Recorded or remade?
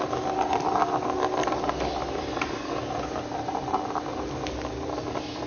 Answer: recorded